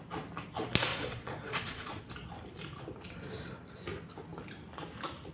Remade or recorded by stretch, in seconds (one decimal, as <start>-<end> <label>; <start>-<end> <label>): 0.0-0.9 recorded; 0.9-2.1 remade; 2.1-5.3 recorded